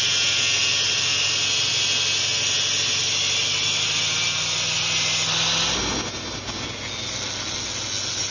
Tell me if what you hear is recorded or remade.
recorded